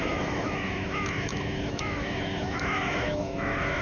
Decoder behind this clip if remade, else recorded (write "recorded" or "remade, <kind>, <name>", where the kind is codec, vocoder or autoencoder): remade, autoencoder, DAC-VAE